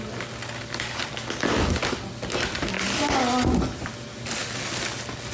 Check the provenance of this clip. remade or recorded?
recorded